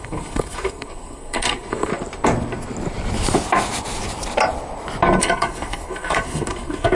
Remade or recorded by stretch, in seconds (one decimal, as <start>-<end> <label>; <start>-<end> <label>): 0.0-1.9 remade; 1.9-5.2 recorded; 5.2-6.9 remade